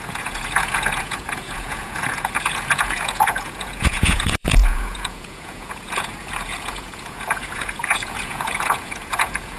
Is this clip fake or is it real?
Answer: fake